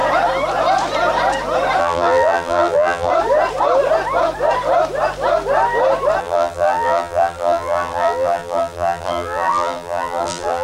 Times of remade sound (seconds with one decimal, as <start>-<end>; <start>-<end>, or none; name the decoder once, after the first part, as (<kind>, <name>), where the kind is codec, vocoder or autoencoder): 1.8-3.1 (vocoder, BigVGAN v2); 6.2-10.6